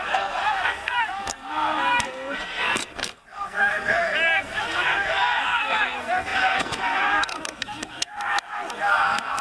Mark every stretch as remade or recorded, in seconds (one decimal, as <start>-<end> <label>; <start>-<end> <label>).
0.0-9.4 remade